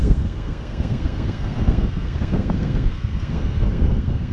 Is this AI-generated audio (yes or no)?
yes